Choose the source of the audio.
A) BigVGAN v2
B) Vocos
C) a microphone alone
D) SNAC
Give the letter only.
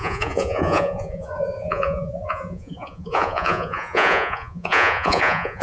B